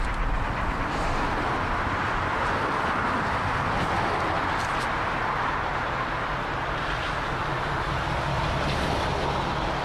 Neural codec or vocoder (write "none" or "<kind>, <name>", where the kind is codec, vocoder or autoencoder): none